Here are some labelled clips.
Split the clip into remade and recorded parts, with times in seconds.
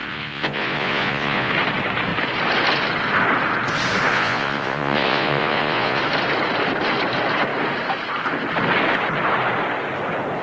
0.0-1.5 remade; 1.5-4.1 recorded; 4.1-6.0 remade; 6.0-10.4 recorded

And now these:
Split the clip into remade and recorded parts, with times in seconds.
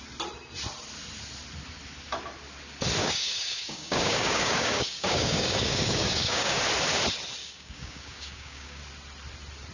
0.0-3.0 recorded; 3.0-6.6 remade; 6.6-7.4 recorded; 7.4-8.8 remade; 8.8-9.7 recorded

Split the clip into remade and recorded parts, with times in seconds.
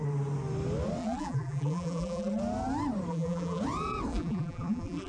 0.0-1.0 recorded; 1.0-2.4 remade; 2.4-3.1 recorded; 3.1-3.6 remade; 3.6-4.1 recorded; 4.1-5.1 remade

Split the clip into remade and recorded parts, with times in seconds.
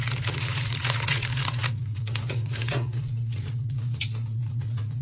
0.0-5.0 remade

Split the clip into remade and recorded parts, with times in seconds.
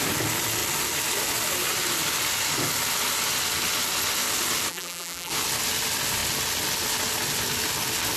0.0-4.7 recorded; 4.7-5.3 remade; 5.3-8.2 recorded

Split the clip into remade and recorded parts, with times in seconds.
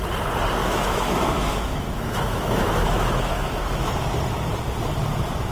0.0-0.6 recorded; 0.6-3.9 remade; 3.9-5.5 recorded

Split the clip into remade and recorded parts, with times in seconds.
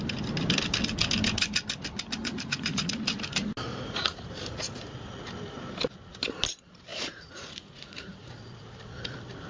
0.0-2.2 recorded; 2.2-2.9 remade; 2.9-3.7 recorded; 3.7-4.3 remade; 4.3-6.9 recorded; 6.9-8.2 remade; 8.2-9.5 recorded